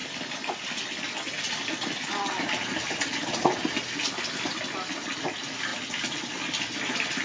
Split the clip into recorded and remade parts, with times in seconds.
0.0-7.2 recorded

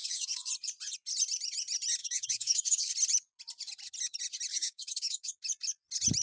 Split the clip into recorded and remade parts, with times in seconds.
0.0-0.5 remade; 0.5-2.0 recorded; 2.0-2.9 remade; 2.9-4.5 recorded; 4.5-5.3 remade; 5.3-6.2 recorded

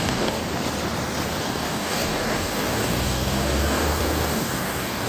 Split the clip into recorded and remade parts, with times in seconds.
0.0-0.4 remade; 0.4-1.4 recorded; 1.4-5.1 remade